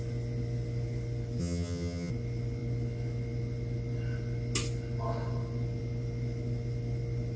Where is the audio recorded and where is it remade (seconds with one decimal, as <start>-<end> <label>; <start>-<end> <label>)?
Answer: 0.0-1.4 recorded; 1.4-2.1 remade; 2.1-7.4 recorded